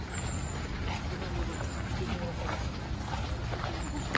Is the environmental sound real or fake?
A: real